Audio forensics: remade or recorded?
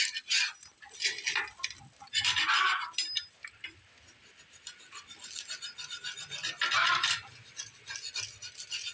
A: recorded